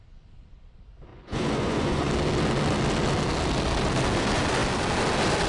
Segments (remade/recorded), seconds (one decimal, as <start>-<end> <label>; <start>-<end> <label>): 0.0-1.1 recorded; 1.1-2.1 remade; 2.1-5.5 recorded